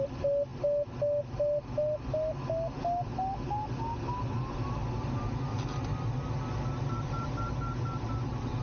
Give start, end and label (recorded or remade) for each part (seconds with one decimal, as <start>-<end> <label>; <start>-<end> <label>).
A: 0.0-8.6 recorded